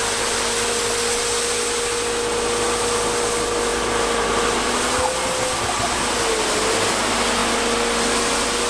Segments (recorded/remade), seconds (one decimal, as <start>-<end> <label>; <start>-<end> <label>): 0.0-8.7 recorded